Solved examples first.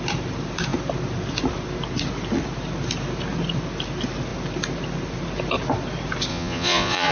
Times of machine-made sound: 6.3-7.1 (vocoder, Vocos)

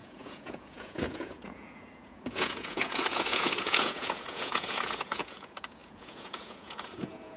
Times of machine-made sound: 0.0-7.4 (vocoder, Vocos)

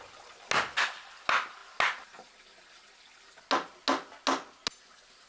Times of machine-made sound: none